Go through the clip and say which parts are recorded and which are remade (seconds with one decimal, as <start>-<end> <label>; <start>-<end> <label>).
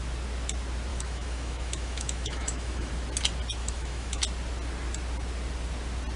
0.0-0.9 recorded; 0.9-2.9 remade; 2.9-3.6 recorded; 3.6-4.2 remade; 4.2-6.2 recorded